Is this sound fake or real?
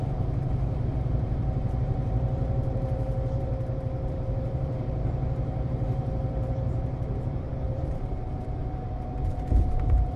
fake